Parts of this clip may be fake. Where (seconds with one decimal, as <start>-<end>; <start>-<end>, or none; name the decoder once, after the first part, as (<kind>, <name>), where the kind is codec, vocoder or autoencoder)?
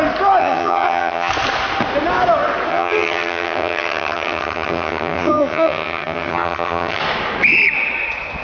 0.4-1.3 (vocoder, HiFi-GAN); 2.7-7.0